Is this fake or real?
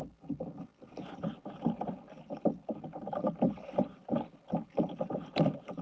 real